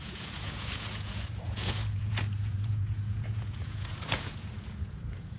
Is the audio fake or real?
fake